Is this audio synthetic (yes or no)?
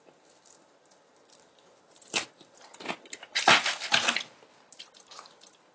no